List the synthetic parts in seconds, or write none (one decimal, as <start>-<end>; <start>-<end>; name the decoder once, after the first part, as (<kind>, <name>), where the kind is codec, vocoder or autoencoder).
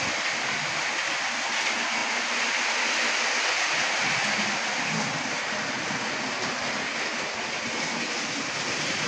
none